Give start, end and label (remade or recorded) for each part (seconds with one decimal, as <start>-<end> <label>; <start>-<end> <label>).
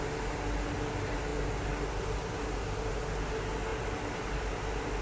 0.0-5.0 recorded